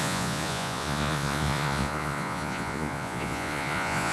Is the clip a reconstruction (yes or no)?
yes